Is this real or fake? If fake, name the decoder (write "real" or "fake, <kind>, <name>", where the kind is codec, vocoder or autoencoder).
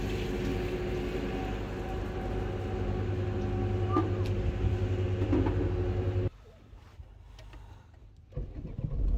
real